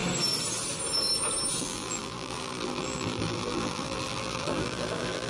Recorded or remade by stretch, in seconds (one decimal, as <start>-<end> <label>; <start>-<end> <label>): 0.0-1.6 recorded; 1.6-5.3 remade